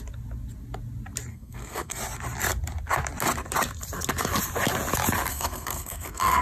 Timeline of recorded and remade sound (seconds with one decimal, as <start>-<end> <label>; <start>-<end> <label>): 0.0-1.3 recorded; 1.3-2.0 remade; 2.0-5.3 recorded; 5.3-6.4 remade

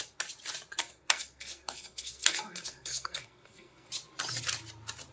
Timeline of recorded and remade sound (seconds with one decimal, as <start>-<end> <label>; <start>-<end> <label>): 0.0-0.8 recorded; 0.8-3.9 remade; 3.9-5.1 recorded

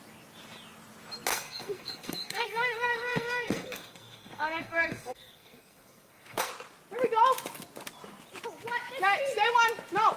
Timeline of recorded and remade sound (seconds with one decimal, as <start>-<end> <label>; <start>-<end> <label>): 0.0-1.3 recorded; 1.3-6.5 remade; 6.5-10.2 recorded

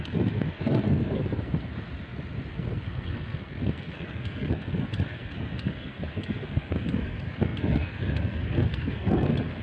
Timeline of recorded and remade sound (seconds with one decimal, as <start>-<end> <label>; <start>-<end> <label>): 0.0-1.7 remade; 1.7-2.5 recorded; 2.5-9.6 remade